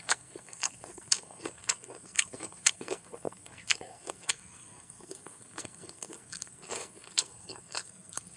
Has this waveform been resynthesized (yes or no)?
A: yes